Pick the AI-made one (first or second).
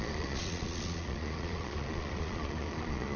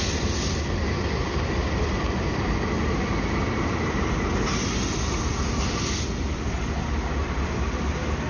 first